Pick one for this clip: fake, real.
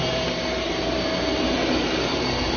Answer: fake